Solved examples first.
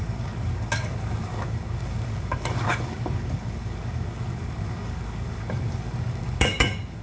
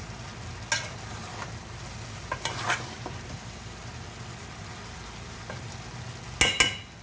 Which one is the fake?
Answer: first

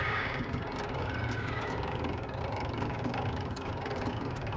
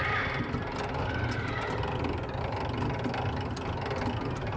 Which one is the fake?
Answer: first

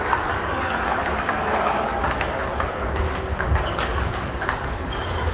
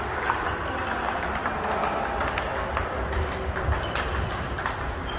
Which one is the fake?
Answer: first